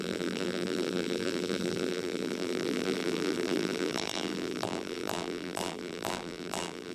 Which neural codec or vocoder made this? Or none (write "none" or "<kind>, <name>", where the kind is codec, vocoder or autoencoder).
vocoder, BigVGAN v2